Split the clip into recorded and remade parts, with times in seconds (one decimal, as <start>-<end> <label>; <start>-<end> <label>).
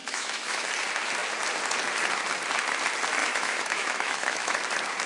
0.0-0.7 remade; 0.7-3.2 recorded; 3.2-4.6 remade; 4.6-5.1 recorded